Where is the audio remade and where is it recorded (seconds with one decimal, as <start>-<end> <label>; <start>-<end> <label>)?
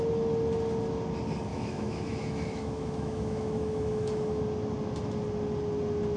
0.0-1.5 recorded; 1.5-4.4 remade; 4.4-6.2 recorded